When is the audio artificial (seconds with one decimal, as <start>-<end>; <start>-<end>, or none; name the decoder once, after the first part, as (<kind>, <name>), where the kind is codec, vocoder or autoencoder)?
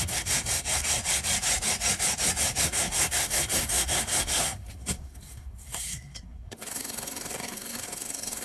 0.0-1.0 (codec, SNAC); 2.6-8.4